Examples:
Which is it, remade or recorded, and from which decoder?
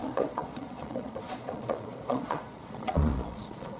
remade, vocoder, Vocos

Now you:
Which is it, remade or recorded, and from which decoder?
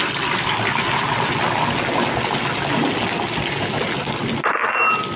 recorded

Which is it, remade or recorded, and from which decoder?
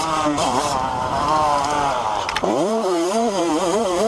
remade, vocoder, BigVGAN v2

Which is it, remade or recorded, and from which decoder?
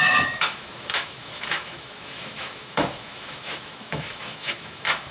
remade, autoencoder, DAC-VAE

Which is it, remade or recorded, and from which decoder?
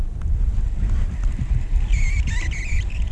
recorded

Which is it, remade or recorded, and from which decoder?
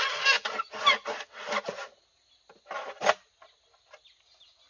recorded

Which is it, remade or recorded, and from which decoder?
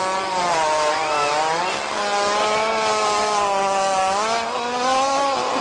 recorded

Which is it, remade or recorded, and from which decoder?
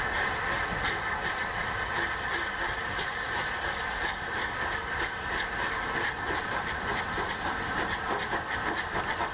recorded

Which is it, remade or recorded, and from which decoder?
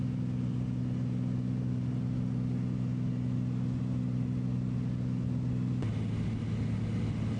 recorded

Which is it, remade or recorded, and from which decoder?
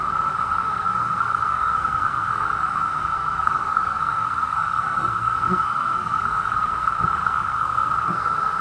remade, codec, SNAC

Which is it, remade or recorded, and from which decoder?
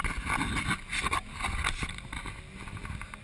recorded